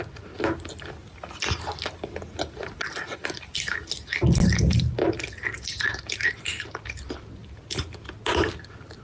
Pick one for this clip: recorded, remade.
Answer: recorded